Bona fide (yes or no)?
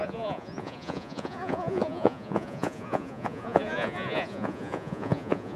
no